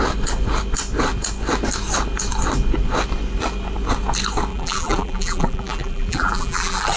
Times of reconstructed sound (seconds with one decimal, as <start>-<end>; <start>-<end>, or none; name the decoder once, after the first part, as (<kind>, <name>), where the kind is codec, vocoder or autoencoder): 4.5-7.0 (vocoder, BigVGAN v2)

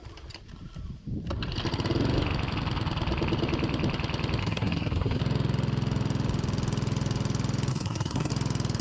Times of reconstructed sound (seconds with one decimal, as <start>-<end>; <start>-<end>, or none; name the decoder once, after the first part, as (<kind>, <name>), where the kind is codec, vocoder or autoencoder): 4.4-5.2 (codec, SNAC); 7.7-8.3

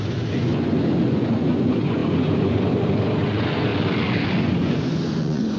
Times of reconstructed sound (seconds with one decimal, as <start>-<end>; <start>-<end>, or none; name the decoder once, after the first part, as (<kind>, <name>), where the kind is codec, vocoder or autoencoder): 0.0-3.7 (vocoder, Vocos); 4.4-5.6

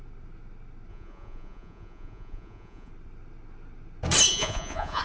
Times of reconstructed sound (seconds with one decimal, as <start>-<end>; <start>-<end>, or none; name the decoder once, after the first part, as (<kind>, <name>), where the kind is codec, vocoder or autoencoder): 0.9-2.9 (vocoder, Vocos); 4.3-5.0

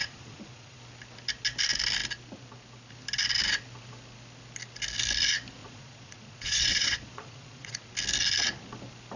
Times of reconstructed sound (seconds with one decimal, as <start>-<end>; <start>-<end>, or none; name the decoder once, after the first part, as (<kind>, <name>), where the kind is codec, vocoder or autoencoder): 0.0-0.8 (vocoder, Vocos); 5.6-7.9